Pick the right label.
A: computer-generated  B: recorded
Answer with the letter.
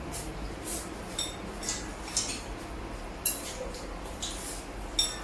B